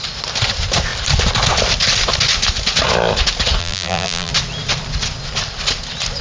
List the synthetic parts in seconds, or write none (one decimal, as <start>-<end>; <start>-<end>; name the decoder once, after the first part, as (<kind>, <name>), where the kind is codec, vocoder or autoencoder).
3.6-4.3 (vocoder, BigVGAN v2)